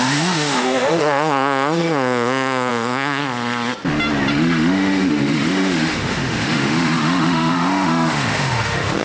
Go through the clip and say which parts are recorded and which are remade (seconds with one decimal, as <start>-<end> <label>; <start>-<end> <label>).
0.0-3.2 remade; 3.2-4.3 recorded; 4.3-9.0 remade